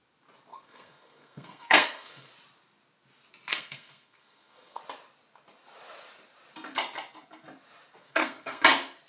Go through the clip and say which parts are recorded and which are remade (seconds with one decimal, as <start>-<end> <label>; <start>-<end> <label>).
0.0-0.5 recorded; 0.5-2.3 remade; 2.3-3.5 recorded; 3.5-4.8 remade; 4.8-8.0 recorded; 8.0-8.6 remade; 8.6-9.1 recorded